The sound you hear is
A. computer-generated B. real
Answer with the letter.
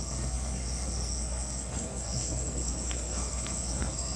A